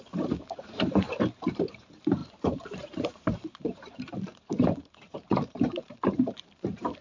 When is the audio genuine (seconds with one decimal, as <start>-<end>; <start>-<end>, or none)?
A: none